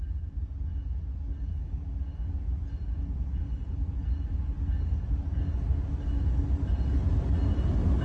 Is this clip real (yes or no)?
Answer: yes